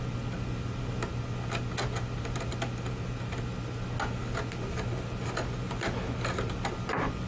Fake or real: real